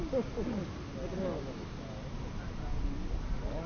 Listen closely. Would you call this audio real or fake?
real